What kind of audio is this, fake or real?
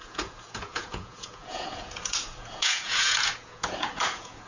fake